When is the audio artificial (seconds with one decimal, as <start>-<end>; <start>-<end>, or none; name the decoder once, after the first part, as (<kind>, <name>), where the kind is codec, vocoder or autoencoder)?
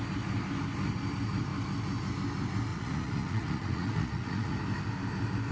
2.7-4.5 (vocoder, Vocos)